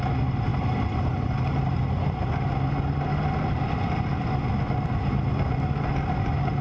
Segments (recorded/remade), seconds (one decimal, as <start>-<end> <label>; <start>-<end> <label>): 0.0-6.6 recorded